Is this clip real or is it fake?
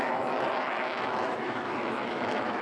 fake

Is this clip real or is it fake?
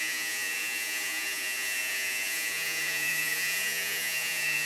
fake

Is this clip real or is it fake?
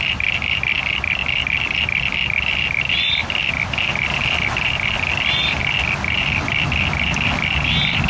real